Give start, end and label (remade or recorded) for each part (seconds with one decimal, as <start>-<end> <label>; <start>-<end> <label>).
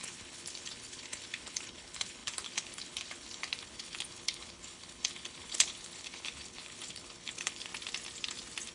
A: 0.0-7.7 remade; 7.7-8.7 recorded